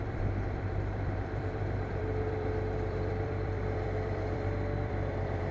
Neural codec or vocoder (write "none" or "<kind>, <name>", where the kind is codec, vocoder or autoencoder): vocoder, BigVGAN v2